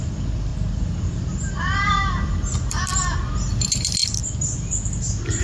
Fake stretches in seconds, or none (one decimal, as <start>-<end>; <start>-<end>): none